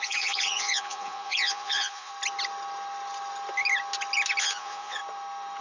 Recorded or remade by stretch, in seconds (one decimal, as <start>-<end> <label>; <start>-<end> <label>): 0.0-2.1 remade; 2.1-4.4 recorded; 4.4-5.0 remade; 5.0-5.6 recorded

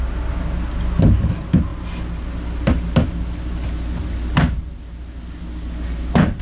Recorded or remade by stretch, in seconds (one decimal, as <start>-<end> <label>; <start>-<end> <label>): 0.0-6.4 recorded

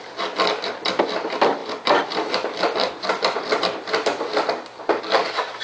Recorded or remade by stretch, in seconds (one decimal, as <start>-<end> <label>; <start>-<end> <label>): 0.0-5.6 recorded

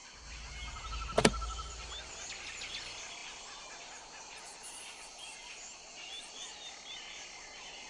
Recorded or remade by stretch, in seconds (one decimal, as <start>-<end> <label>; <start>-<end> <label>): 0.0-7.9 recorded

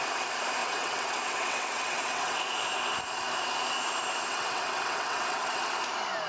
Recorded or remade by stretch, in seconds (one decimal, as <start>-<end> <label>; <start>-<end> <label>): 0.0-0.6 recorded; 0.6-2.4 remade; 2.4-4.3 recorded; 4.3-5.7 remade; 5.7-6.3 recorded